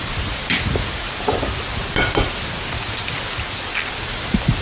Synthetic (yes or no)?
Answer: no